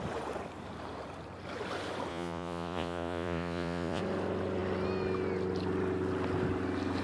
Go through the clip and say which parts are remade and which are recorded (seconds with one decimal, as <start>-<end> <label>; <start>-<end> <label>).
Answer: 0.0-2.1 recorded; 2.1-4.0 remade; 4.0-7.0 recorded